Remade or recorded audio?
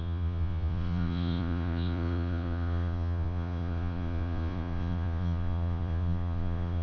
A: remade